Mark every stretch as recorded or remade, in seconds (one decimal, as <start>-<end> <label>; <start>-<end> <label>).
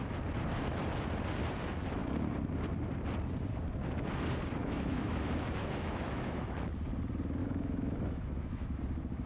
0.0-4.6 recorded; 4.6-6.4 remade; 6.4-7.4 recorded; 7.4-8.8 remade; 8.8-9.3 recorded